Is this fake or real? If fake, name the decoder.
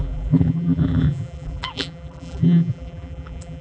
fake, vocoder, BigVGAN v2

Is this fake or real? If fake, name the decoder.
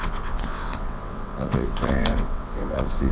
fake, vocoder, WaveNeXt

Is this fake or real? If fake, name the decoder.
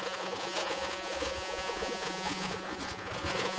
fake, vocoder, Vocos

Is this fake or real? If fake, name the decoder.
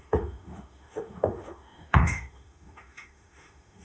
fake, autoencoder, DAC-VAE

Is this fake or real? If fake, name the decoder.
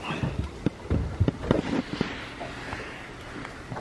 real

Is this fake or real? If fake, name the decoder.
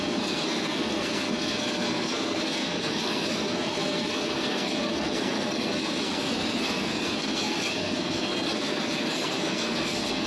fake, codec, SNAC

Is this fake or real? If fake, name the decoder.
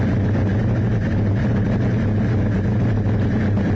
real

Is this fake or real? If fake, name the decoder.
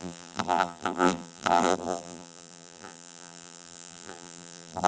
fake, vocoder, BigVGAN v2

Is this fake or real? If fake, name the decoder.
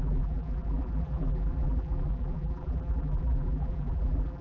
fake, vocoder, BigVGAN v2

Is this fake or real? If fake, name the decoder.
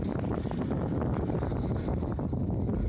real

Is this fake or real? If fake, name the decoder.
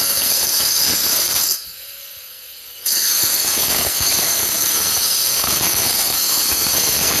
fake, codec, SNAC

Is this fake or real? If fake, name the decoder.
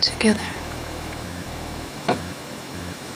fake, autoencoder, DAC-VAE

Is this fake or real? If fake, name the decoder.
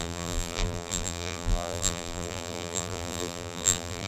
fake, vocoder, BigVGAN v2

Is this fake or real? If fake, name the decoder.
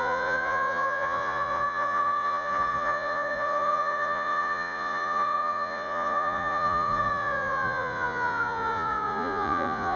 fake, vocoder, Vocos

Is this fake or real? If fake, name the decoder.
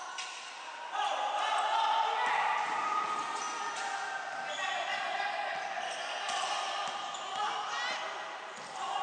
real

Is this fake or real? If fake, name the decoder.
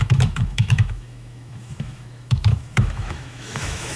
fake, autoencoder, DAC-VAE